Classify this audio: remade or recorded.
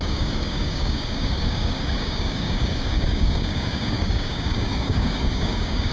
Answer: remade